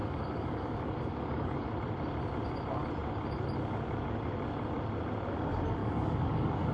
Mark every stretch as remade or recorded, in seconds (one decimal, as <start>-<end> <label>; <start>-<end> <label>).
0.0-1.7 remade; 1.7-5.8 recorded; 5.8-6.7 remade